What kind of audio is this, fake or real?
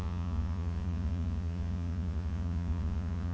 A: fake